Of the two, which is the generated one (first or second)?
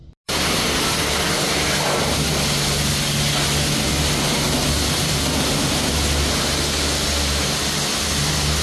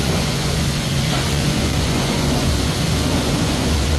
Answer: second